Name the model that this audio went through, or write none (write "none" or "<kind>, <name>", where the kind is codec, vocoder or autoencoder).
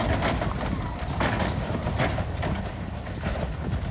none